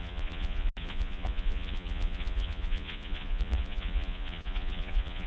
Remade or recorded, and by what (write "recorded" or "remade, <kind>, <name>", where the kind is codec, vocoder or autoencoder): remade, vocoder, Vocos